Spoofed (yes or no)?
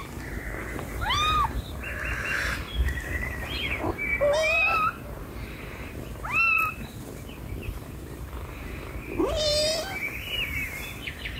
yes